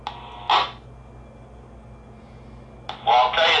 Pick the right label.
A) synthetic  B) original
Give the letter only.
B